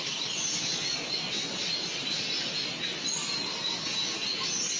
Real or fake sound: real